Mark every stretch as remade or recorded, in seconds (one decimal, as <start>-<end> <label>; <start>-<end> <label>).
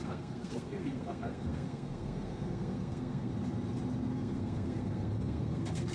0.0-3.3 remade; 3.3-4.1 recorded; 4.1-5.9 remade